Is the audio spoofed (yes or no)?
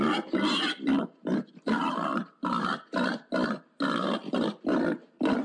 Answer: no